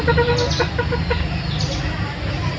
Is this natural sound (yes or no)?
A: yes